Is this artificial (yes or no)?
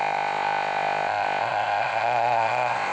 yes